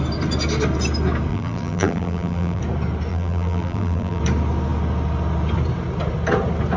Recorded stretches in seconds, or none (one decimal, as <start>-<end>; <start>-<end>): 0.0-1.3; 2.6-3.1; 4.2-6.8